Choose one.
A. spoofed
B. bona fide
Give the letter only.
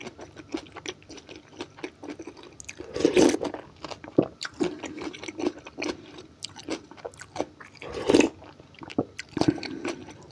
B